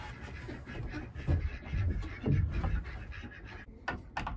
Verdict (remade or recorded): recorded